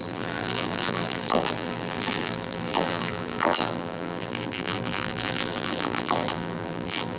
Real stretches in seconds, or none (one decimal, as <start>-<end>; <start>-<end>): none